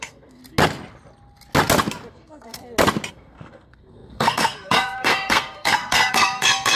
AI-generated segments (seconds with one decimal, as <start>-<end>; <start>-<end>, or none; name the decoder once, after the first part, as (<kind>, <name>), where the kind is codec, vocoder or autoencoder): 0.0-0.4 (codec, SNAC); 2.1-2.6; 3.1-6.8